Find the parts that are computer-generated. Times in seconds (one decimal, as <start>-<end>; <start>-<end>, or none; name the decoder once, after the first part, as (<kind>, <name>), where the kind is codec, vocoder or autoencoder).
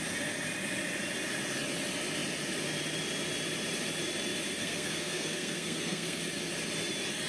4.6-6.2 (codec, SNAC)